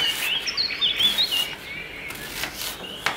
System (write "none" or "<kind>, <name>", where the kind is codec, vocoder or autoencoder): none